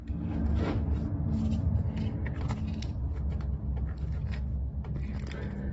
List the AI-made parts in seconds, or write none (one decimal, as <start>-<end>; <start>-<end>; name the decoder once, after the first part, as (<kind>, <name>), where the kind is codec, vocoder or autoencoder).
none